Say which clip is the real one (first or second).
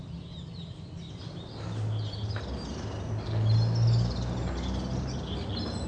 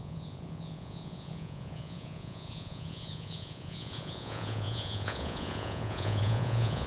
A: first